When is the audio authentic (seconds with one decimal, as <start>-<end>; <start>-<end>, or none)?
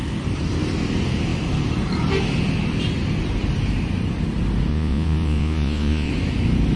0.0-4.7; 6.1-6.8